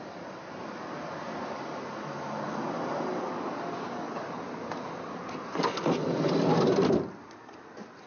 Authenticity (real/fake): real